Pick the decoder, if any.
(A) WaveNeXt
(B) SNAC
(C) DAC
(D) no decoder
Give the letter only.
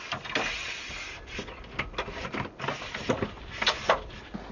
D